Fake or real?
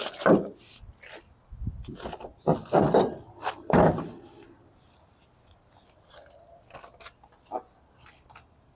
real